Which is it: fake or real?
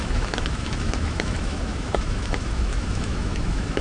fake